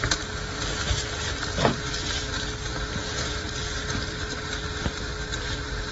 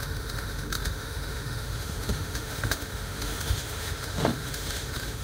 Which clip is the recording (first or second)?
first